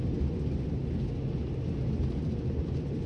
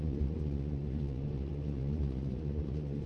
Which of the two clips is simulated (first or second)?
second